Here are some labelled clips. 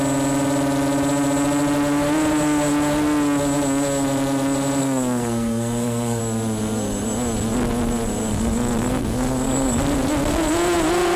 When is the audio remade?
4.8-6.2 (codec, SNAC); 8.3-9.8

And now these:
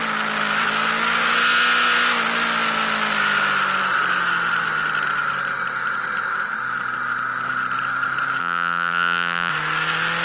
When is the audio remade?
8.4-9.5 (vocoder, BigVGAN v2)

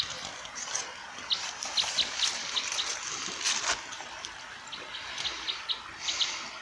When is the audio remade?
none

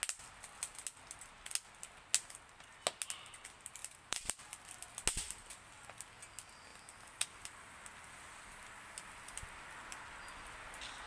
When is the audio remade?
3.8-4.6 (vocoder, BigVGAN v2)

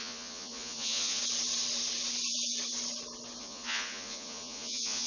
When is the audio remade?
0.0-1.2 (vocoder, Vocos); 3.4-5.1

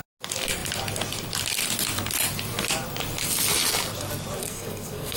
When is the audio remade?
4.4-5.2 (codec, SNAC)

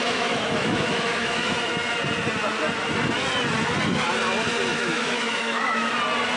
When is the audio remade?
0.0-1.5 (autoencoder, DAC-VAE); 4.7-5.9

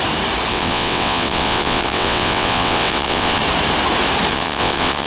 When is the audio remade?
0.5-3.4 (vocoder, WaveNeXt); 4.3-5.1